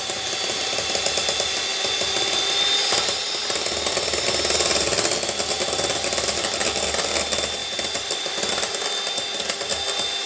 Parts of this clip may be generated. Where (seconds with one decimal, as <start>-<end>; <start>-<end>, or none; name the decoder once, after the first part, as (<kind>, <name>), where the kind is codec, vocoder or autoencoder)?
7.6-8.5 (vocoder, BigVGAN v2)